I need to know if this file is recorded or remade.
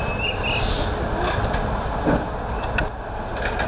recorded